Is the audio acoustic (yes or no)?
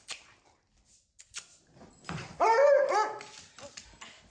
yes